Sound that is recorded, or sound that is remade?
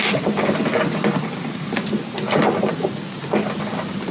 recorded